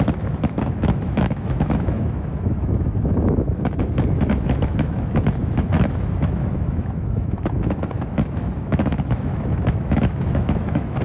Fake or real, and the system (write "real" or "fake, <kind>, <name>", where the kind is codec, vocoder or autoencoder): fake, autoencoder, DAC-VAE